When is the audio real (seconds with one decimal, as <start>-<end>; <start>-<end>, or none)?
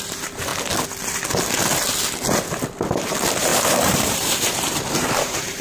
0.5-3.1